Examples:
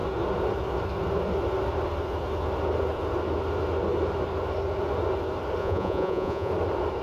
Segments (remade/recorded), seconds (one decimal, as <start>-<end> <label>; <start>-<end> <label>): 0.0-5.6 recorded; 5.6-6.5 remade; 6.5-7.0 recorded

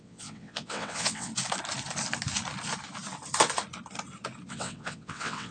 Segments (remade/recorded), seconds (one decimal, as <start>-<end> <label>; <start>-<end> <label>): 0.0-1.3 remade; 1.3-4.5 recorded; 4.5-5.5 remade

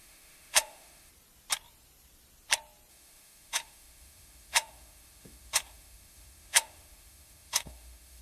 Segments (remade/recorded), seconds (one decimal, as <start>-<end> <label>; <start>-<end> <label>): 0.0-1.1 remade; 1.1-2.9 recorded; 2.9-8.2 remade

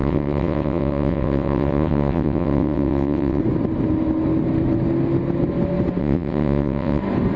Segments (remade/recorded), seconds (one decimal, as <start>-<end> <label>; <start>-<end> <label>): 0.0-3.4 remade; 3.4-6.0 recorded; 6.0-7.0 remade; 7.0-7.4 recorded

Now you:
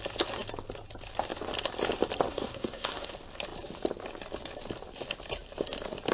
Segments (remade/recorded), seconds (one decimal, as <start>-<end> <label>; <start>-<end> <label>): 0.0-2.3 recorded; 2.3-3.1 remade; 3.1-6.1 recorded

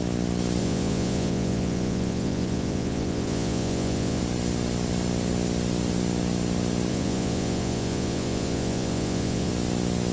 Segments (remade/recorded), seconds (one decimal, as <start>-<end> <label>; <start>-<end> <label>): 0.0-0.6 recorded; 0.6-4.2 remade; 4.2-6.9 recorded; 6.9-9.5 remade; 9.5-10.1 recorded

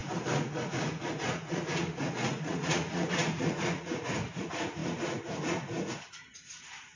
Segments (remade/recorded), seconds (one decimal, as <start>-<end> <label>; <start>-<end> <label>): 0.0-7.0 remade